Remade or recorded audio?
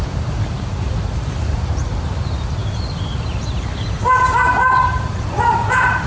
remade